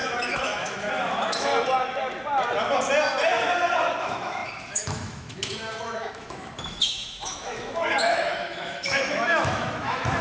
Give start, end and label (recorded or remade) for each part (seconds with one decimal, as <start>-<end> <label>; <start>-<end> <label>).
0.0-1.5 remade; 1.5-4.0 recorded; 4.0-10.2 remade